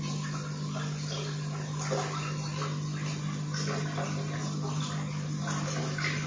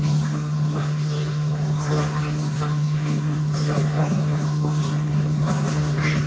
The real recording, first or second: first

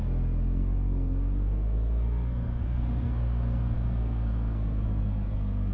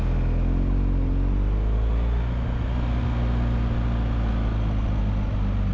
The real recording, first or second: second